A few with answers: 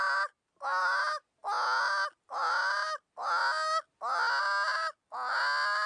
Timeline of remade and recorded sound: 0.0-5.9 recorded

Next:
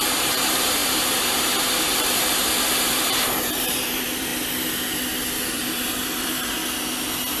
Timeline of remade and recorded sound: 0.0-4.3 remade; 4.3-5.5 recorded; 5.5-6.6 remade; 6.6-7.4 recorded

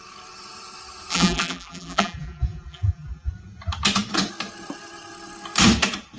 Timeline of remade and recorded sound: 0.0-1.1 recorded; 1.1-3.3 remade; 3.3-6.2 recorded

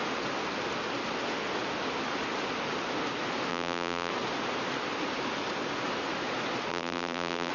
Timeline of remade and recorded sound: 0.0-3.5 recorded; 3.5-4.1 remade; 4.1-6.7 recorded; 6.7-7.5 remade

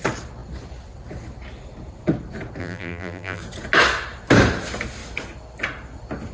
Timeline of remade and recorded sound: 0.0-2.6 recorded; 2.6-3.4 remade; 3.4-6.3 recorded

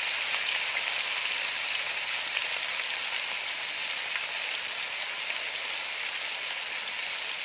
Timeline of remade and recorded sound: 0.0-3.8 recorded; 3.8-4.6 remade; 4.6-7.4 recorded

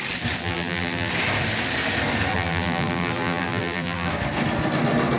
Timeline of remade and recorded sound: 0.0-0.4 recorded; 0.4-1.1 remade; 1.1-2.3 recorded; 2.3-4.1 remade; 4.1-5.2 recorded